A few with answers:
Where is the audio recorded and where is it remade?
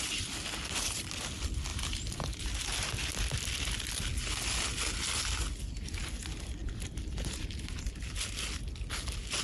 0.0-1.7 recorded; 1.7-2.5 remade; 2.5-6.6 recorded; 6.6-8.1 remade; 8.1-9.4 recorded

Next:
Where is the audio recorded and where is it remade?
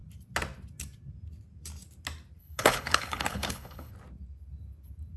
0.0-2.4 recorded; 2.4-3.9 remade; 3.9-5.2 recorded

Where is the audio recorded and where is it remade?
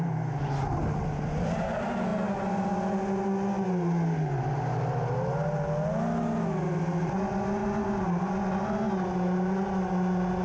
0.0-10.4 recorded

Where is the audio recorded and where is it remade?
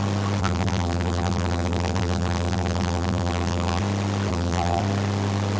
0.0-0.4 recorded; 0.4-3.8 remade; 3.8-4.3 recorded; 4.3-4.8 remade; 4.8-5.6 recorded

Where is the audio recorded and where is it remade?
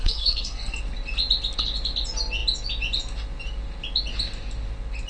0.0-0.8 remade; 0.8-5.1 recorded